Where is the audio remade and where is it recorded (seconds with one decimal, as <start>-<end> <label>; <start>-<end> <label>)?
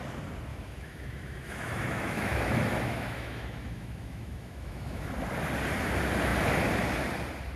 0.0-0.5 recorded; 0.5-5.1 remade; 5.1-7.6 recorded